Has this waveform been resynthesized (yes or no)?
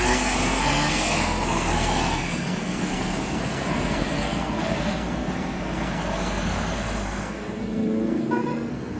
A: yes